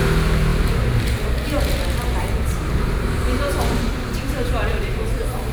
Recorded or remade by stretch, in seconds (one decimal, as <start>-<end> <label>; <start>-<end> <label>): 0.0-2.2 recorded; 2.2-5.5 remade